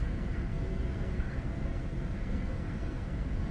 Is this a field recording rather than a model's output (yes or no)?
no